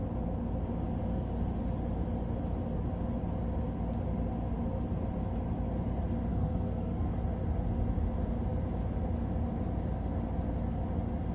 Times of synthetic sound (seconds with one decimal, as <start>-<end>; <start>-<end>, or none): 6.3-7.1

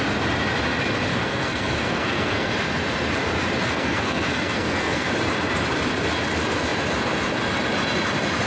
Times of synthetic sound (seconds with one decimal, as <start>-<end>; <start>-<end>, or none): 1.1-2.5; 3.6-5.1